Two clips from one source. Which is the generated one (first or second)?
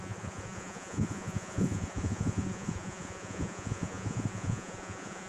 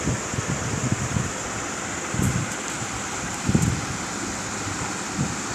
first